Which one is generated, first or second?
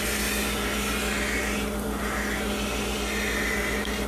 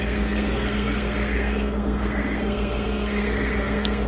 second